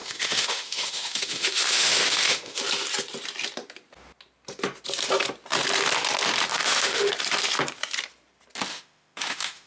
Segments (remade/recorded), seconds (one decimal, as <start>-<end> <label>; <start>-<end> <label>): 0.0-2.6 remade; 2.6-6.5 recorded; 6.5-7.1 remade; 7.1-8.7 recorded; 8.7-9.7 remade